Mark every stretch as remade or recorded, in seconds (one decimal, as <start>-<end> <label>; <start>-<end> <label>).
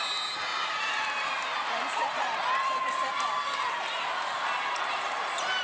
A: 0.0-0.6 recorded; 0.6-4.0 remade; 4.0-5.6 recorded